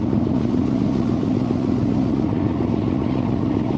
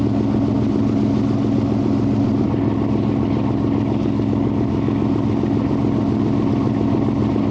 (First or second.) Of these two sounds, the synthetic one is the first